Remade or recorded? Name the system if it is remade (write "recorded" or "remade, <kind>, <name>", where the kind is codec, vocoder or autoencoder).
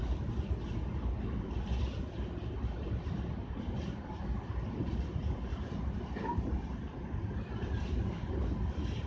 recorded